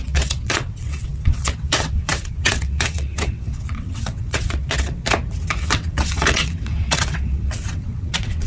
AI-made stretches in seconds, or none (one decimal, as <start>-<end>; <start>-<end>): 0.0-5.0; 5.6-8.5